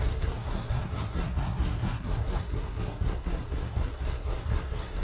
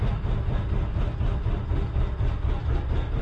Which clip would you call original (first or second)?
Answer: second